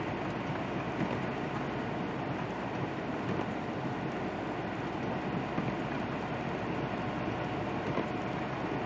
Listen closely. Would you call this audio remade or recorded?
recorded